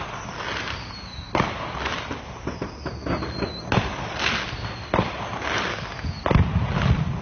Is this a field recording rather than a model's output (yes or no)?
yes